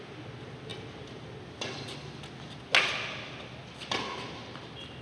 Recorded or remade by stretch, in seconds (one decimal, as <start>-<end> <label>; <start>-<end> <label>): 0.0-5.0 recorded